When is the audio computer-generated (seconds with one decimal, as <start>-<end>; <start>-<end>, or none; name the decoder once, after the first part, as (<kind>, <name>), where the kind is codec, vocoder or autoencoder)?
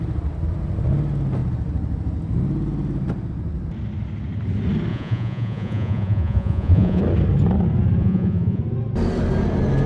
4.9-7.0 (vocoder, Vocos); 8.0-8.6